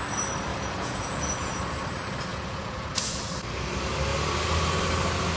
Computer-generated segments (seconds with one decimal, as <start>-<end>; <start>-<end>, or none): 0.5-1.5; 2.3-3.3